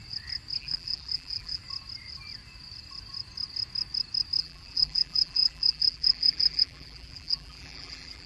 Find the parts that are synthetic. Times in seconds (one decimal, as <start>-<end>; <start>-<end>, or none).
0.6-1.6; 4.4-8.3

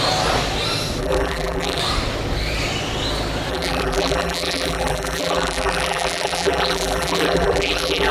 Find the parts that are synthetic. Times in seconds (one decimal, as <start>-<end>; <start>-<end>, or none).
1.0-1.8; 3.5-8.1

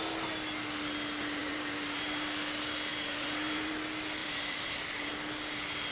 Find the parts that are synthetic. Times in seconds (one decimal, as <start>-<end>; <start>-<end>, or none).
1.4-2.2; 2.9-3.7; 4.2-5.1

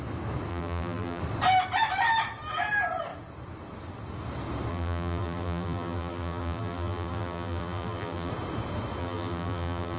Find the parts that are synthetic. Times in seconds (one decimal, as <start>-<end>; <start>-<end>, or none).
0.5-1.2; 4.7-8.3; 9.0-10.0

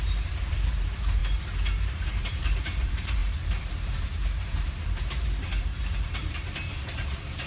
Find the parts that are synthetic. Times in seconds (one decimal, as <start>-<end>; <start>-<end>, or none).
0.0-7.5

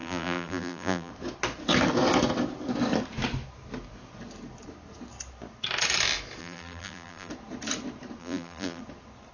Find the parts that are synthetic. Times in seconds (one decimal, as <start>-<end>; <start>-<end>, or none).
0.0-1.1; 6.4-7.3; 8.2-8.8

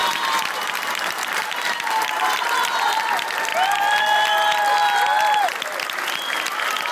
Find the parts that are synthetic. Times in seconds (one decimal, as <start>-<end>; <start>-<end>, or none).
0.0-3.0